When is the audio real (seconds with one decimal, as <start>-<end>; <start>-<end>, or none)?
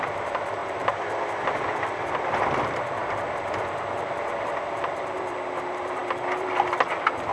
0.6-1.5